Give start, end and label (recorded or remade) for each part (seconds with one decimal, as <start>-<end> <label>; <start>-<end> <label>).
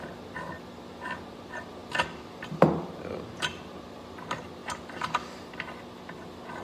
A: 0.0-6.6 recorded